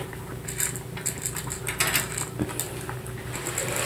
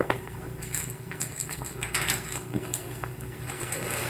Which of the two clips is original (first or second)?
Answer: first